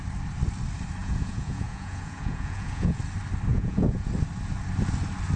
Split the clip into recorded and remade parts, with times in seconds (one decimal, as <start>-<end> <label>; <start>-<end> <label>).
0.0-1.0 recorded; 1.0-3.0 remade; 3.0-3.5 recorded; 3.5-4.1 remade; 4.1-5.4 recorded